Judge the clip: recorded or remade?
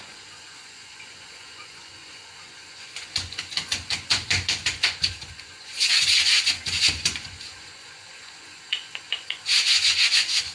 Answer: remade